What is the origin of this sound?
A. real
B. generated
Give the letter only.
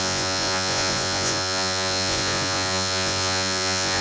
B